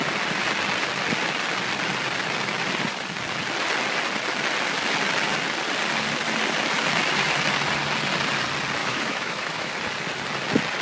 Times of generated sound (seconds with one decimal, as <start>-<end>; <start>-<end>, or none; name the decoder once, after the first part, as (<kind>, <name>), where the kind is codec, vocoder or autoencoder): 8.8-9.7 (autoencoder, DAC-VAE)